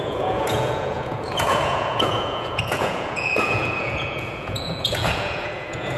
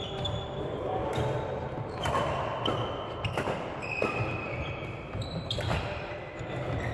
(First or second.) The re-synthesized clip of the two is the first